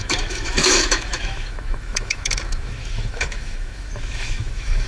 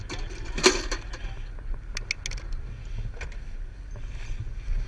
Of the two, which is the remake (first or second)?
first